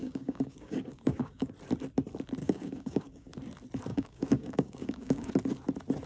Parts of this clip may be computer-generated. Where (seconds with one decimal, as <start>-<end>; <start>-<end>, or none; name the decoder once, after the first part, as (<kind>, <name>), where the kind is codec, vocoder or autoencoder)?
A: 0.0-1.5 (codec, DAC); 2.4-3.3; 3.9-5.3